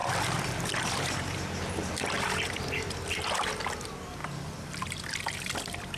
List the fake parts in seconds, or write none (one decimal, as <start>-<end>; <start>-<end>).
0.0-6.0